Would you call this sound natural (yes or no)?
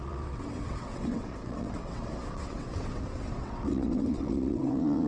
no